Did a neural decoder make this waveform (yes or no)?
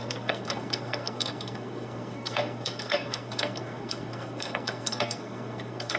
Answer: yes